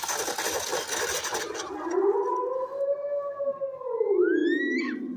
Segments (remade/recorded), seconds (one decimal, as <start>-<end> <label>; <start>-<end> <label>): 0.0-5.2 recorded